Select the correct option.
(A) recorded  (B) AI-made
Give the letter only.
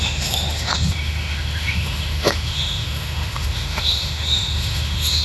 B